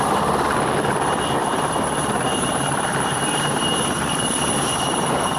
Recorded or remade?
remade